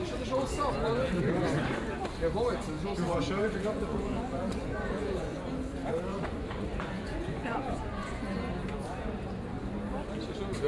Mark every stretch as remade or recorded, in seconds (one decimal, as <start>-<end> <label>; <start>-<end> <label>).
0.0-3.4 recorded; 3.4-5.5 remade; 5.5-6.1 recorded; 6.1-8.4 remade; 8.4-10.7 recorded